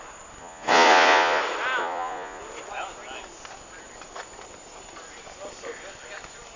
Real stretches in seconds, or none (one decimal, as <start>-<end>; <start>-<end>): 0.0-0.4; 1.4-1.8; 2.4-6.6

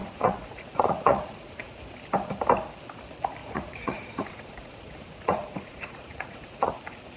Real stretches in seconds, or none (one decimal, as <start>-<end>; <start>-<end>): 1.8-3.4; 6.7-7.2

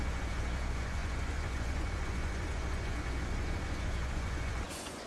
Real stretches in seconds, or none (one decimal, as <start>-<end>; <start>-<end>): none